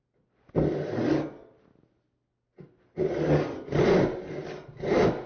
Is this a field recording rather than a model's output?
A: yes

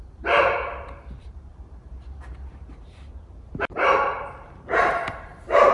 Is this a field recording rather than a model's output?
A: no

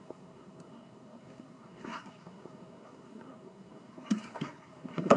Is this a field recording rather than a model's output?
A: no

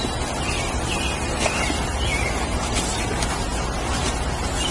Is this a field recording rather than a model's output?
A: yes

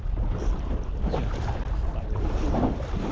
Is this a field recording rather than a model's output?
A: no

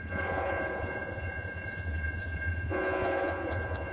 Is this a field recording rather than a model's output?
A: no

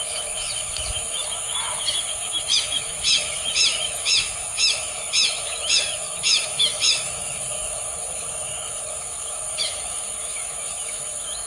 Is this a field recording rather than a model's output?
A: no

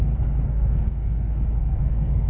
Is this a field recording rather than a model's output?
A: no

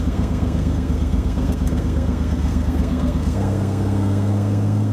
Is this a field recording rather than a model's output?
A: no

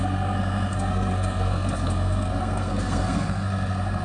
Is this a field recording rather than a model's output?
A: no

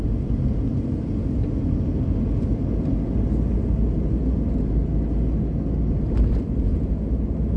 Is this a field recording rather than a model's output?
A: yes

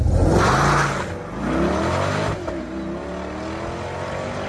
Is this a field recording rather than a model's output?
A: yes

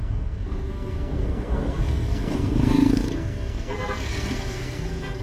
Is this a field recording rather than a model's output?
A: no